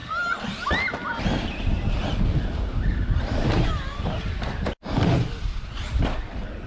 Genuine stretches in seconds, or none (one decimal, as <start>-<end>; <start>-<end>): 0.0-6.7